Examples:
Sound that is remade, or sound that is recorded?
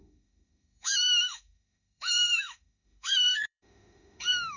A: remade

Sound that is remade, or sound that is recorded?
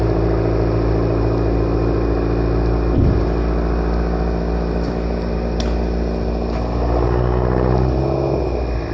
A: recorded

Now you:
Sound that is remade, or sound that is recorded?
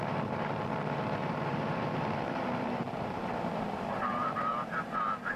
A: remade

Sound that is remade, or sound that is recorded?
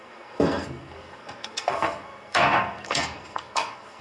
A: remade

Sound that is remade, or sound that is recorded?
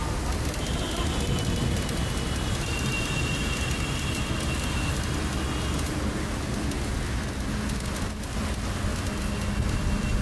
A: recorded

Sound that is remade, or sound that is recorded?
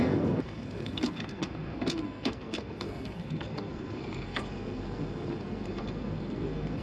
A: remade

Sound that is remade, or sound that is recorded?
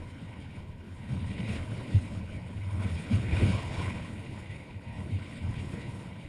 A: remade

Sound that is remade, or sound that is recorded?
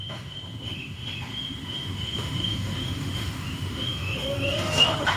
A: remade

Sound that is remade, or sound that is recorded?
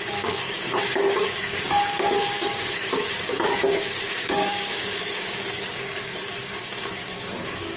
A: remade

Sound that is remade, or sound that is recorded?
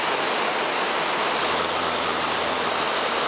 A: recorded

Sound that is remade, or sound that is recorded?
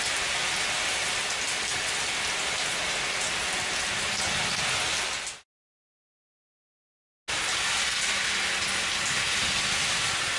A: recorded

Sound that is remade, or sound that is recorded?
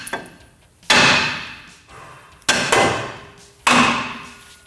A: recorded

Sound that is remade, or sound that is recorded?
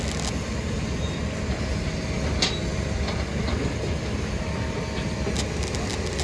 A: recorded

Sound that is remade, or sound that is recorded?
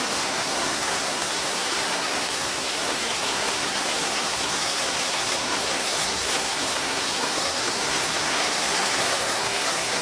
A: remade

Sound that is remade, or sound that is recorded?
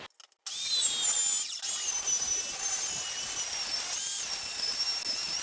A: recorded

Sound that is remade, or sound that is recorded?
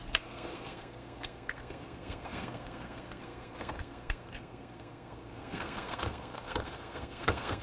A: remade